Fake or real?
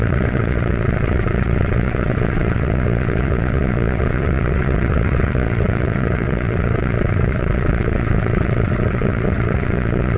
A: fake